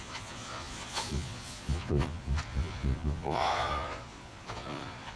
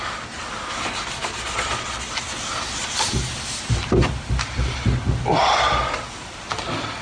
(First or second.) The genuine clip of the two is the second